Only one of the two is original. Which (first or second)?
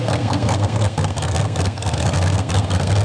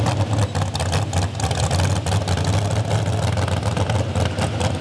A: second